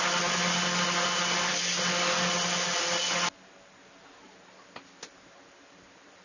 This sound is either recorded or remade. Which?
recorded